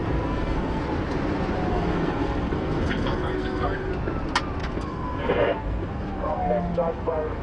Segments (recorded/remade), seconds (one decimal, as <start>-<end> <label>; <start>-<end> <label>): 0.0-0.8 remade; 0.8-1.7 recorded; 1.7-3.9 remade; 3.9-4.6 recorded; 4.6-7.4 remade